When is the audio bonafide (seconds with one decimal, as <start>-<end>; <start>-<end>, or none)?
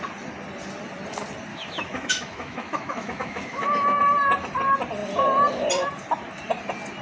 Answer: 0.0-1.5; 4.0-7.0